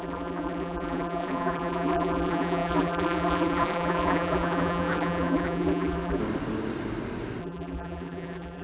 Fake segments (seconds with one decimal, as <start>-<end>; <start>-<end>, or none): 0.0-6.2; 7.4-8.6